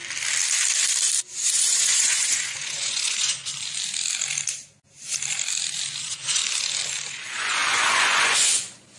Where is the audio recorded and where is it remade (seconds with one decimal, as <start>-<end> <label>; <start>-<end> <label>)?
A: 0.0-1.5 recorded; 1.5-3.5 remade; 3.5-6.0 recorded; 6.0-6.4 remade; 6.4-7.1 recorded; 7.1-9.0 remade